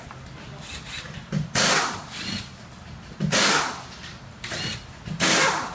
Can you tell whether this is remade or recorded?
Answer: recorded